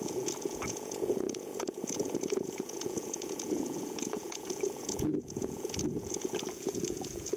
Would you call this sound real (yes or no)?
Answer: no